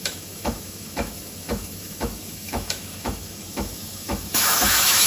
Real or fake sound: fake